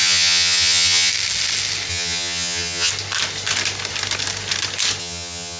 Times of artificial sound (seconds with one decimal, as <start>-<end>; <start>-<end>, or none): 0.0-1.1; 1.9-2.9; 5.0-5.6